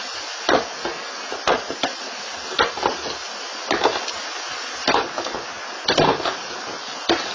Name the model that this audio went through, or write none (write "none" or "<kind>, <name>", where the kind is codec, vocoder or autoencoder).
none